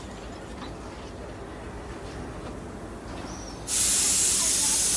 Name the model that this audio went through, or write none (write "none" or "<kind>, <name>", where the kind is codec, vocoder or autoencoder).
none